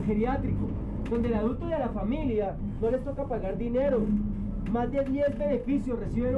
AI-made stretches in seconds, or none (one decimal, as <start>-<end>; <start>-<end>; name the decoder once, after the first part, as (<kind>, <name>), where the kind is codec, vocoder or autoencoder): none